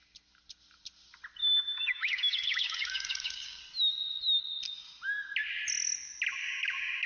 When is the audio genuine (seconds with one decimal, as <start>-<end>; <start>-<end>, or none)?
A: 0.0-1.4; 3.6-6.4